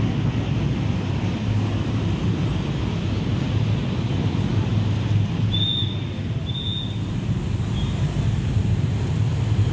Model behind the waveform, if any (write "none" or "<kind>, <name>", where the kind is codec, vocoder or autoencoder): none